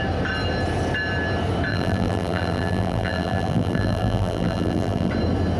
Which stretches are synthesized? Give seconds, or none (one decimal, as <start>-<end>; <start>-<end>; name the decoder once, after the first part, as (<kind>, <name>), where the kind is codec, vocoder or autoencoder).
1.7-5.1 (vocoder, BigVGAN v2)